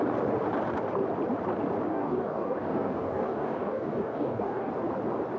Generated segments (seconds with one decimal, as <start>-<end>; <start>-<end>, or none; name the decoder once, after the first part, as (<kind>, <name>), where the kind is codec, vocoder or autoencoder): 1.9-4.7 (codec, DAC)